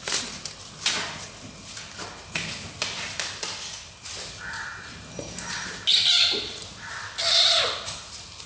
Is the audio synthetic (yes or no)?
no